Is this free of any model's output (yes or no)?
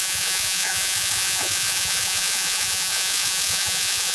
no